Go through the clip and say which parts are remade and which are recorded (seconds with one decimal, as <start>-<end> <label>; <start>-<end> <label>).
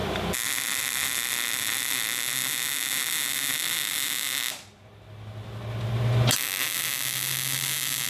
0.0-8.1 recorded